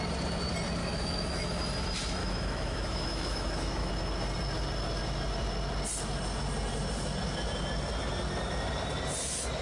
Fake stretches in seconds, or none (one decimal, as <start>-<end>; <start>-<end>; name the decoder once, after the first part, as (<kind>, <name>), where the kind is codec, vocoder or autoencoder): 0.8-1.6 (autoencoder, DAC-VAE); 2.2-3.9